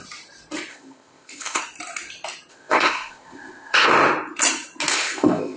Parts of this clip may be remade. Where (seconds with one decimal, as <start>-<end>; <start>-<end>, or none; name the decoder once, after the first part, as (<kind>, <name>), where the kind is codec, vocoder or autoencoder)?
0.7-1.6 (codec, ZipCodec); 2.5-3.9; 4.9-5.6